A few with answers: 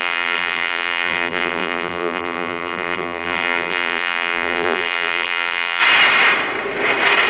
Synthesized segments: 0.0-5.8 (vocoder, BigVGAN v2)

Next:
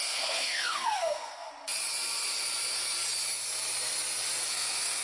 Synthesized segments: 0.0-1.5 (codec, SNAC); 4.5-5.0

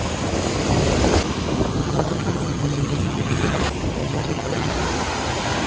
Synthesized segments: 1.8-3.6 (vocoder, HiFi-GAN); 4.0-4.7

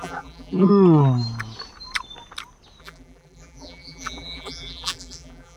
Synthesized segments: 0.0-0.7 (vocoder, BigVGAN v2); 2.8-5.6

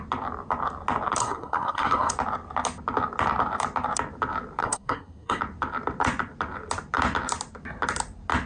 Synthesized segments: 1.2-2.1 (codec, SNAC); 4.6-5.4

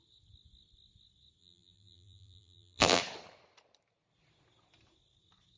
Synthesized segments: 1.4-3.0 (vocoder, BigVGAN v2)

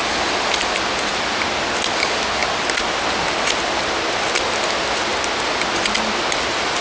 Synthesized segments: none

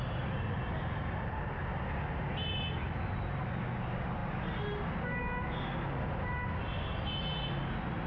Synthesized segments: none